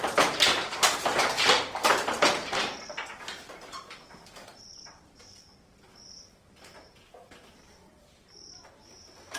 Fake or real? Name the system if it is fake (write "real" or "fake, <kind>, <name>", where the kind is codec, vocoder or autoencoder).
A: fake, vocoder, BigVGAN v2